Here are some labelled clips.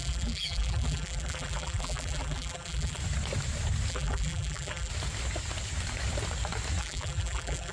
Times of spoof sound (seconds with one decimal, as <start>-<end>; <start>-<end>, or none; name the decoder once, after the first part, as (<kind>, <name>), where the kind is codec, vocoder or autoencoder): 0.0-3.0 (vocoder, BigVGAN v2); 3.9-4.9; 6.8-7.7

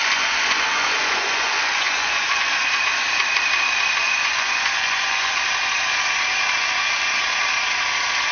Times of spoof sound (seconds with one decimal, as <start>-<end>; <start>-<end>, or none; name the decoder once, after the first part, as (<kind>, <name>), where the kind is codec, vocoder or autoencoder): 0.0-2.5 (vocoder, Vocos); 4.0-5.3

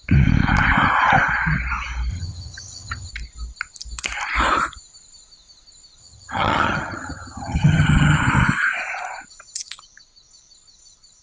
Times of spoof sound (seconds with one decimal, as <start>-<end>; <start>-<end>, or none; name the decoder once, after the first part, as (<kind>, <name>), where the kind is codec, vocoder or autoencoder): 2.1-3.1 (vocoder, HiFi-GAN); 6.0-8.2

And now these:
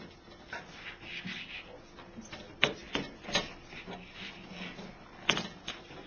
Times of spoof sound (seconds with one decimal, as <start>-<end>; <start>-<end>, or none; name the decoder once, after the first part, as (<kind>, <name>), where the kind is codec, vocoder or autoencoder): none